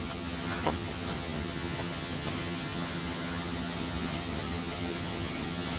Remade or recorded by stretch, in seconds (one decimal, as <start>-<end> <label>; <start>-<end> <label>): 0.0-5.8 remade